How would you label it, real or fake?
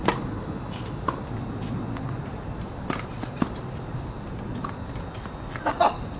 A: real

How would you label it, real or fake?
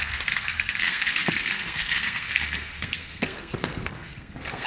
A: fake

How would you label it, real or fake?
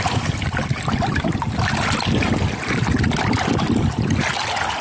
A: real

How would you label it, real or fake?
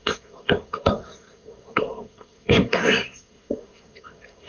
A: fake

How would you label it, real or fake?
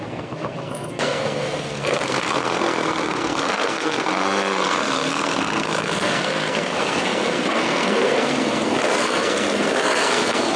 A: fake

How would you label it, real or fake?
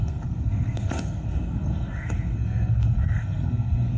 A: fake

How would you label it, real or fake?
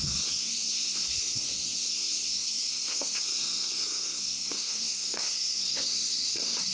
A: fake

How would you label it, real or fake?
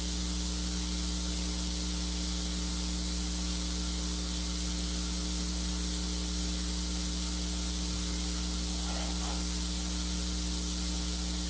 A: real